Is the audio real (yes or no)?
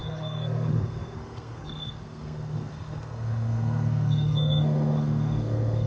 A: no